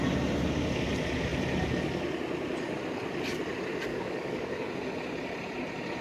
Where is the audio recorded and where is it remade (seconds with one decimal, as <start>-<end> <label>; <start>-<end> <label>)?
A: 0.0-3.9 recorded; 3.9-4.7 remade; 4.7-6.0 recorded